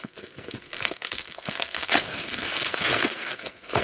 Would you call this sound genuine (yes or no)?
no